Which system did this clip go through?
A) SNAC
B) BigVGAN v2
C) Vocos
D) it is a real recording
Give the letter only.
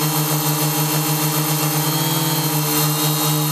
D